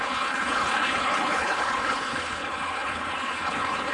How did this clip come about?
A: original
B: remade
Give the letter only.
B